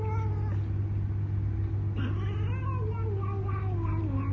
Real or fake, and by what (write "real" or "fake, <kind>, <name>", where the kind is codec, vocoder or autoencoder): real